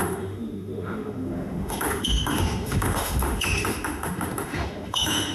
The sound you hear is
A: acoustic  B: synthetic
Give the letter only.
B